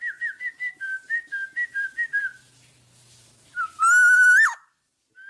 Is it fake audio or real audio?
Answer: real